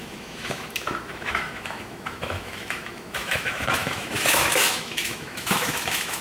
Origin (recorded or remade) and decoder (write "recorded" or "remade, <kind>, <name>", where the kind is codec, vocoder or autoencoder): remade, autoencoder, DAC-VAE